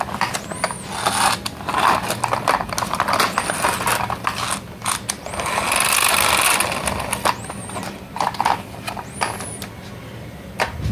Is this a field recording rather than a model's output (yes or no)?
yes